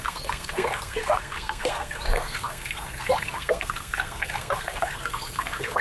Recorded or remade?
remade